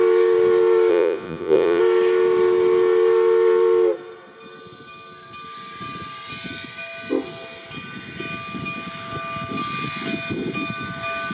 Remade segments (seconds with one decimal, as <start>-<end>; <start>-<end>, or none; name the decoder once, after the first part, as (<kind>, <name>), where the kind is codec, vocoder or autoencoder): 0.9-1.8 (vocoder, Vocos)